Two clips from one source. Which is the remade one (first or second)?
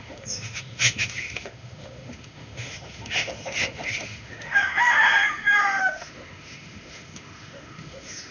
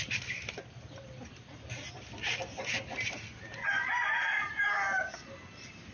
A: first